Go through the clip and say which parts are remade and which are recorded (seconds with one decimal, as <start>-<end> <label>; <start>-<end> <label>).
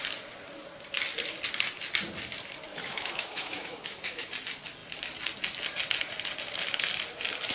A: 0.0-2.7 recorded; 2.7-4.3 remade; 4.3-7.5 recorded